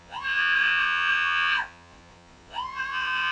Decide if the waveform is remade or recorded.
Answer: remade